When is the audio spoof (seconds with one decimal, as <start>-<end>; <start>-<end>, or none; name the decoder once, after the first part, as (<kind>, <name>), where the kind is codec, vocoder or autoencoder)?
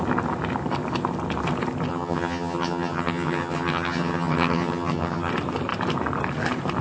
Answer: 1.9-5.3 (vocoder, HiFi-GAN)